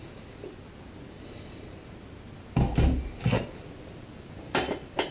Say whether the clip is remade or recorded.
recorded